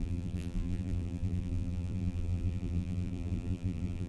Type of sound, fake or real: fake